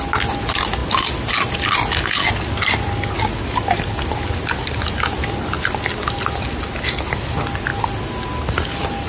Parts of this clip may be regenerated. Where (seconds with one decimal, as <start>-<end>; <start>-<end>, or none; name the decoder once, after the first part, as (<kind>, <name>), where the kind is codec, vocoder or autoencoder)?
none